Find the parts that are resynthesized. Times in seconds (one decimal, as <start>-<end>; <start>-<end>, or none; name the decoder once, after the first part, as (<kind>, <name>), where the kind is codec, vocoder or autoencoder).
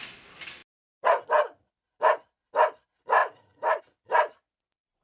3.2-3.8 (vocoder, BigVGAN v2)